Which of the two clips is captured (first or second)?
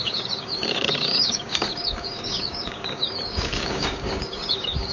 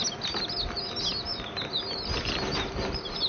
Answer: second